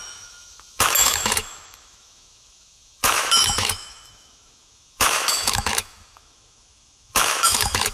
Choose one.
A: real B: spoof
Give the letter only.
B